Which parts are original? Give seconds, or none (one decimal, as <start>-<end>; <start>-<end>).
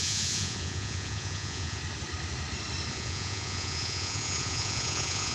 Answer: 1.8-2.9